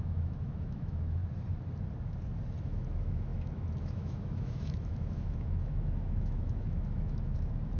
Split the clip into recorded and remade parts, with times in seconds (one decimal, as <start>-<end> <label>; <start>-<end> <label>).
0.0-1.2 remade; 1.2-2.6 recorded; 2.6-7.8 remade